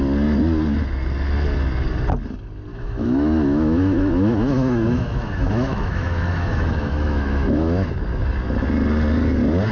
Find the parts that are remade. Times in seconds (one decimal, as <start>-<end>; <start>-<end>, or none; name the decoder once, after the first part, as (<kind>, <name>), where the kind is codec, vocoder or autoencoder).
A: 2.7-7.9 (autoencoder, DAC-VAE)